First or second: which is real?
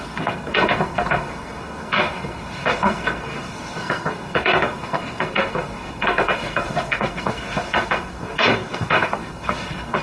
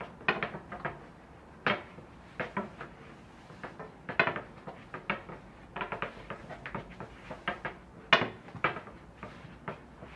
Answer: second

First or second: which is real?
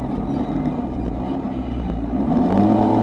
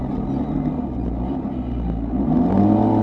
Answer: second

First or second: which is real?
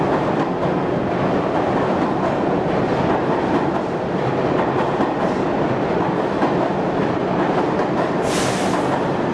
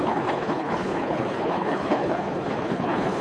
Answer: first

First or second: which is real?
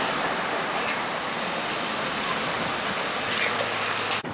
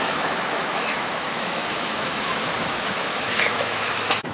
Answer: first